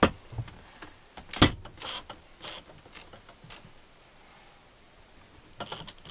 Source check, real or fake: real